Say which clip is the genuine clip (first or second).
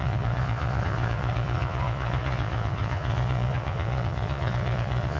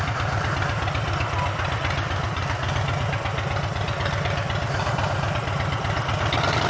second